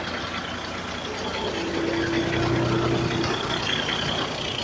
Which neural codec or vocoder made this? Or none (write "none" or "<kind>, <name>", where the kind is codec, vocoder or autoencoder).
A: none